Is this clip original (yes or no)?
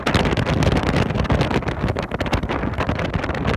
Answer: yes